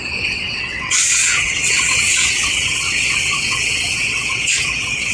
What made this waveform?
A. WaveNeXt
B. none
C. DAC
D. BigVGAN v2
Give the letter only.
A